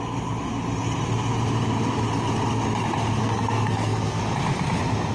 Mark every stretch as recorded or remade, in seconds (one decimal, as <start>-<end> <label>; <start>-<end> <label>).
0.0-3.2 recorded; 3.2-4.2 remade; 4.2-5.1 recorded